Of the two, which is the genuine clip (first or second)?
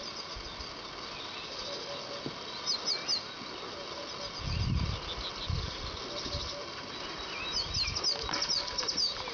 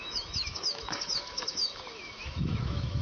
first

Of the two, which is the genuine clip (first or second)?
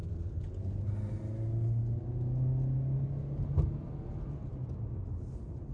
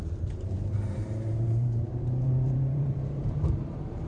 first